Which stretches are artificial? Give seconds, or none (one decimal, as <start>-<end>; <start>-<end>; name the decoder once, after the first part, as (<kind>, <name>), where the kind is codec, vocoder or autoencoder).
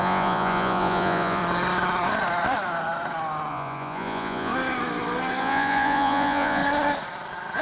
0.0-1.4 (vocoder, Vocos); 3.5-4.5; 5.4-6.6